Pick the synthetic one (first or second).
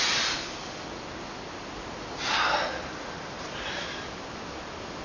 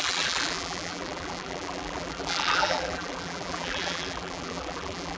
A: second